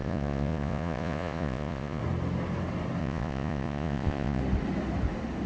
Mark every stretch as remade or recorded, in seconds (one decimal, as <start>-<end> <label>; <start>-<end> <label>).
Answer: 0.0-2.0 remade; 2.0-3.0 recorded; 3.0-4.4 remade; 4.4-5.5 recorded